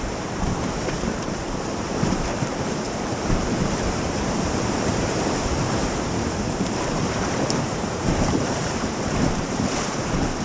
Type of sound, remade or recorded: remade